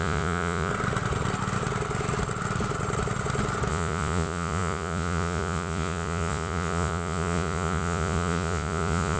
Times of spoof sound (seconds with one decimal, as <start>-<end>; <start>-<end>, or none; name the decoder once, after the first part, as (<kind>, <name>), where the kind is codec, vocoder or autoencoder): 0.0-0.7 (vocoder, Vocos); 3.7-9.2